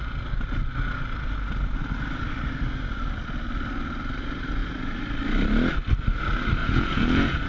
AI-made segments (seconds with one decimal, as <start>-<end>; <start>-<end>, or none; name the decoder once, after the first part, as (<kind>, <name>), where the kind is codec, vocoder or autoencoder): 6.6-7.5 (vocoder, Vocos)